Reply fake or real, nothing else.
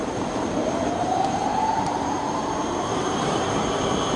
fake